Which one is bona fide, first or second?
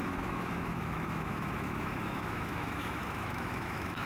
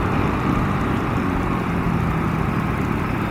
second